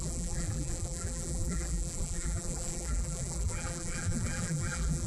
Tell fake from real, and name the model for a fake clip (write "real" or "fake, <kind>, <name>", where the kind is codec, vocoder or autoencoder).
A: fake, vocoder, BigVGAN v2